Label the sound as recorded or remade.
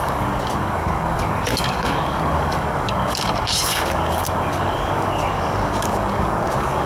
remade